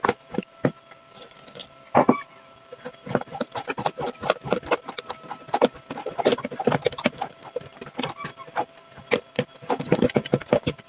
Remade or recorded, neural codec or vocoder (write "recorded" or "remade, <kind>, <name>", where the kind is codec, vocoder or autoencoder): recorded